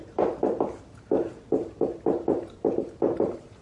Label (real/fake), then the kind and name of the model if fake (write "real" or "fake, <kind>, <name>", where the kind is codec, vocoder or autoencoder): fake, vocoder, BigVGAN v2